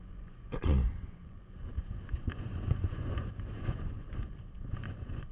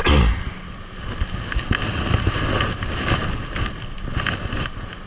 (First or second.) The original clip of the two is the second